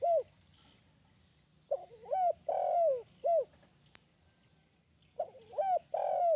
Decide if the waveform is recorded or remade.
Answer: recorded